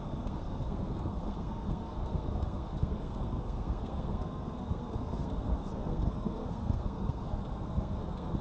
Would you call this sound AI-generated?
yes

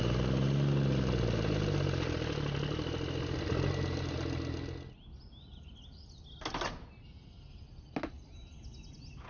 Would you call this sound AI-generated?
no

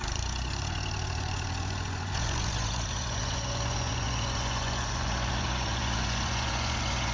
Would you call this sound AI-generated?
yes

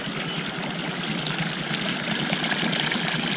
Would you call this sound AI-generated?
no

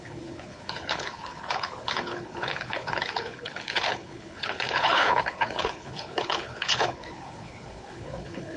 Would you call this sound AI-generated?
yes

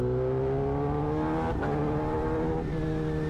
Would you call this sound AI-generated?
no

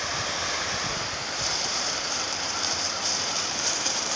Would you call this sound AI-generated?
yes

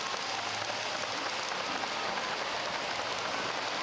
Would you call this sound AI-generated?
no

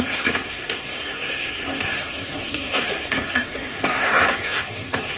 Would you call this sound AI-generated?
yes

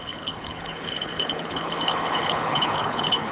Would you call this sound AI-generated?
yes